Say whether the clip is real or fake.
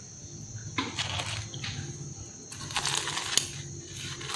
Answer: real